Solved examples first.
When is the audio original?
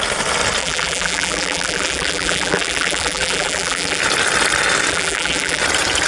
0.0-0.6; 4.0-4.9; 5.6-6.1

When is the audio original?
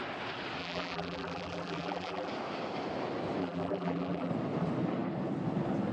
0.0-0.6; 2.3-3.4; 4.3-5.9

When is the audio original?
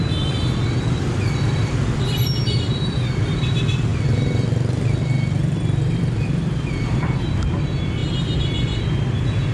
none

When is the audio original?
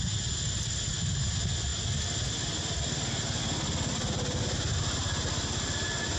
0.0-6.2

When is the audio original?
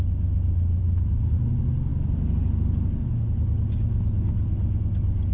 0.0-5.3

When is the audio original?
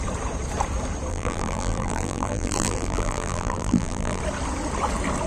0.0-1.1; 4.2-5.3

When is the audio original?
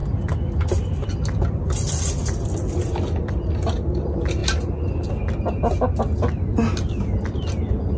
0.0-8.0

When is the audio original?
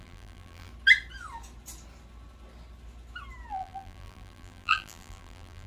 0.7-3.5